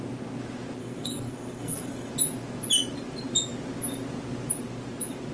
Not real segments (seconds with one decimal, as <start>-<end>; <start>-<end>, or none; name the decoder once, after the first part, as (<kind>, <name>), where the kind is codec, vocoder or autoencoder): 0.8-2.1 (codec, SNAC)